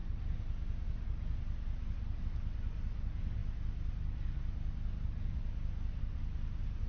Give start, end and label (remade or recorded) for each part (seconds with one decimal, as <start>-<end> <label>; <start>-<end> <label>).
0.0-6.9 recorded